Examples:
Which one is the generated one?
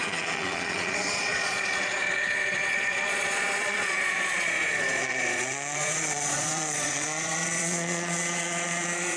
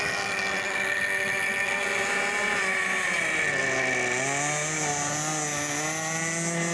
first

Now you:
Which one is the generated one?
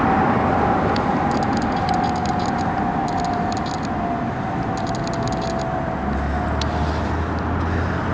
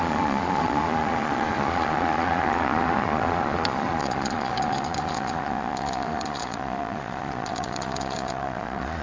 second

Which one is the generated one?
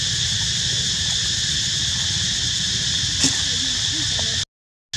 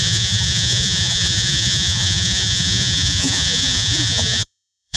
second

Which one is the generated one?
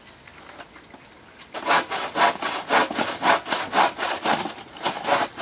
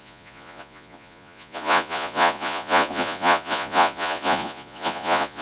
second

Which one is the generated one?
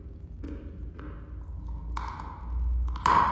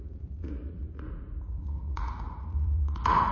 second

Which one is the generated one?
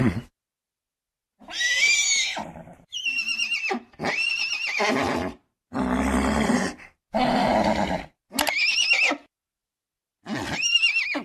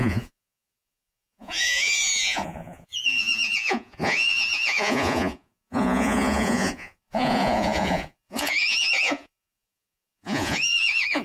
second